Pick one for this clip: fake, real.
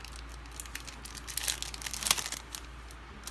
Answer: real